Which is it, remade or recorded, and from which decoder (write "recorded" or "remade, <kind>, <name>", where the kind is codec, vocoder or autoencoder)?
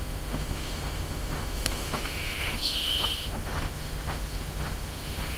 remade, autoencoder, DAC-VAE